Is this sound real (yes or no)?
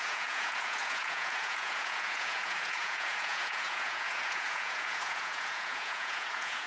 no